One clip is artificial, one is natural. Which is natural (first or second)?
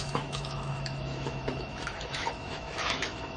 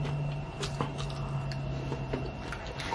second